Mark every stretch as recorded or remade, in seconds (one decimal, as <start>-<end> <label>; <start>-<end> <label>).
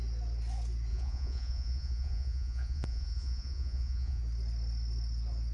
0.0-0.9 recorded; 0.9-4.2 remade; 4.2-5.5 recorded